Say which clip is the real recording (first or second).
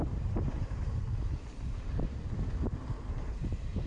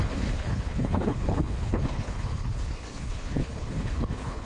first